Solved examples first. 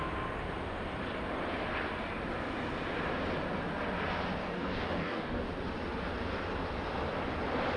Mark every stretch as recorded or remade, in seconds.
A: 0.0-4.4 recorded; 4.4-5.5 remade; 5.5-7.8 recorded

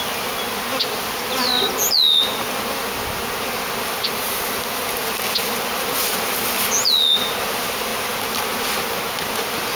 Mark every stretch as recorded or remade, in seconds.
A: 0.0-9.8 recorded

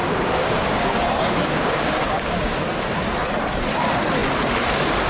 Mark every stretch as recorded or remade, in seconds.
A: 0.0-3.1 remade; 3.1-5.1 recorded

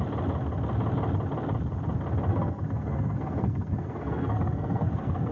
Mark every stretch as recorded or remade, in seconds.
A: 0.0-2.3 recorded; 2.3-5.3 remade

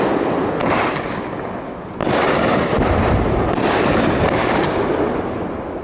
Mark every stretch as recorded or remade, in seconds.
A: 0.0-2.0 recorded; 2.0-5.3 remade; 5.3-5.8 recorded

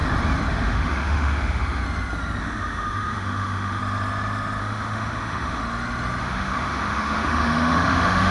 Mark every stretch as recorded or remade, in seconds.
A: 0.0-0.5 recorded; 0.5-1.8 remade; 1.8-2.4 recorded; 2.4-3.8 remade; 3.8-4.6 recorded; 4.6-5.6 remade; 5.6-6.2 recorded; 6.2-8.3 remade